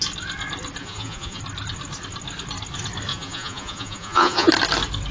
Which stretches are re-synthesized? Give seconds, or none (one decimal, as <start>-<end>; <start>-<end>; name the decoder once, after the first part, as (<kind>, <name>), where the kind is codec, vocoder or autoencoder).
0.8-1.4 (vocoder, Vocos); 3.1-4.5